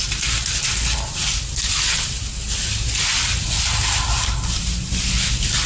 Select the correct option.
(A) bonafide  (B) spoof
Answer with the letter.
A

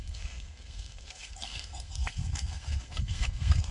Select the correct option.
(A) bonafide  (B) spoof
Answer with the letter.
B